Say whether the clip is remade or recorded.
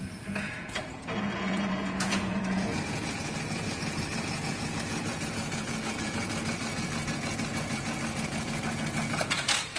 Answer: remade